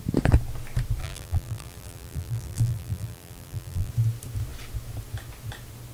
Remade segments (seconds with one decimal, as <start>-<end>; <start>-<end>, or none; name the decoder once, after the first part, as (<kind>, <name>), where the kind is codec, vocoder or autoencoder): 1.0-3.9 (vocoder, BigVGAN v2)